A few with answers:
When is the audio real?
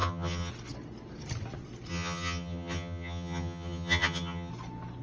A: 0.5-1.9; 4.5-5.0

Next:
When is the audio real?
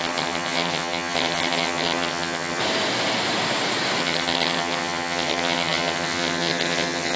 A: 2.6-4.0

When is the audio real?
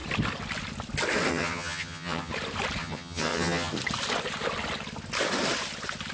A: 0.0-1.3; 2.3-2.8; 3.7-6.1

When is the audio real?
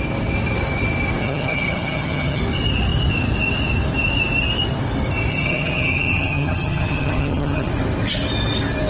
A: 0.0-1.2; 2.4-5.3; 7.7-8.9